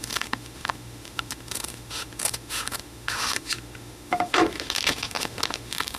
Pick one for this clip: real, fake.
fake